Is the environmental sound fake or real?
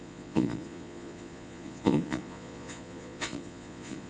fake